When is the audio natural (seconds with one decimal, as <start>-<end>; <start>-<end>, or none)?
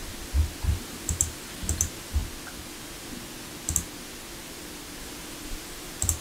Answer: 0.0-0.7; 2.2-5.0